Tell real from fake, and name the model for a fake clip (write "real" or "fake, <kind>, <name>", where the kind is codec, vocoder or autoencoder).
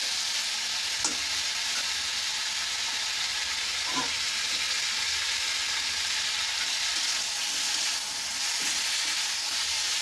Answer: real